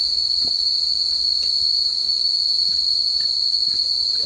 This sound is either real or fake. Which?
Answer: real